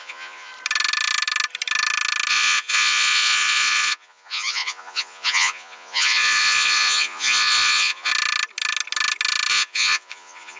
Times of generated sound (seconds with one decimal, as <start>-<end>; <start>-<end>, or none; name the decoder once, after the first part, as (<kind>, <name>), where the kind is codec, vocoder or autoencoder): 0.0-0.5 (vocoder, Vocos); 2.3-8.1; 9.5-10.6